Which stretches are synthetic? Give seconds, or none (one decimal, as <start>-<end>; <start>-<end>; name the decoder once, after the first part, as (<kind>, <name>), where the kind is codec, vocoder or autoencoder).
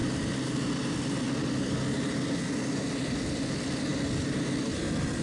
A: none